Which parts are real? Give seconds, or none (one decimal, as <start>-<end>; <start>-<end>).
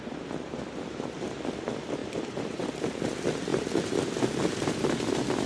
0.0-2.0; 2.9-5.5